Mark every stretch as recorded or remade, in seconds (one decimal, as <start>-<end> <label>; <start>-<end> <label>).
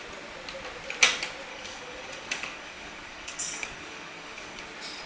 0.0-1.5 recorded; 1.5-4.6 remade; 4.6-5.1 recorded